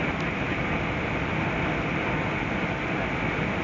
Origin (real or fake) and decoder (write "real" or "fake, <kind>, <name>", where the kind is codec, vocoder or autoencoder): real